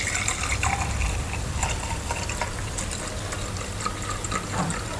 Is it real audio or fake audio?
real